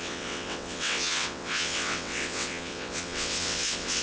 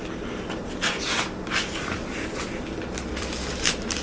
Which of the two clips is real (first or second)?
second